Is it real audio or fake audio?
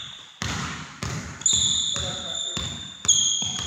real